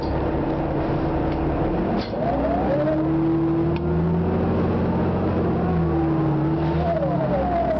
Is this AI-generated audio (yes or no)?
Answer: no